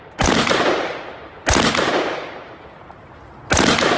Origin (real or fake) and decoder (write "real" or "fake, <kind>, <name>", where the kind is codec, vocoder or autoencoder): real